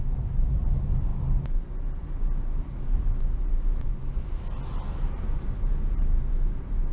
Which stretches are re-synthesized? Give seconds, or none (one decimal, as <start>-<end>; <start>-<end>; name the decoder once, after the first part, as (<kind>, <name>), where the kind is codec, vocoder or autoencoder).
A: none